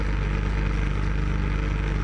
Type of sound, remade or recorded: recorded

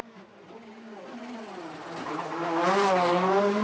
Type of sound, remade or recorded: recorded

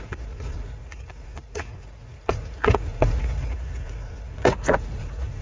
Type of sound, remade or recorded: remade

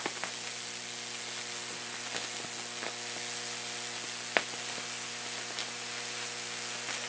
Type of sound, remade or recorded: recorded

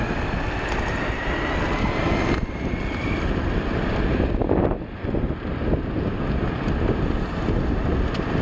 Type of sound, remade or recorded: recorded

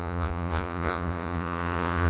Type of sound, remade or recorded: remade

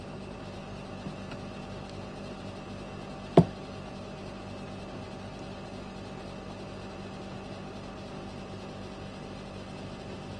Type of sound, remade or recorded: recorded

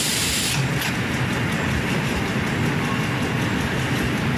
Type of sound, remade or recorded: recorded